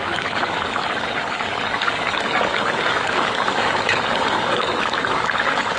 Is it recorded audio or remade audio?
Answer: remade